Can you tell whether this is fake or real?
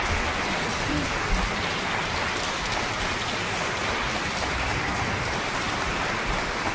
real